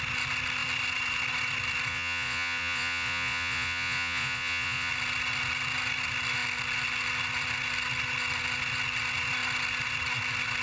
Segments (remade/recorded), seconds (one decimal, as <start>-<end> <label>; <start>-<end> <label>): 0.0-1.9 recorded; 1.9-4.9 remade; 4.9-10.6 recorded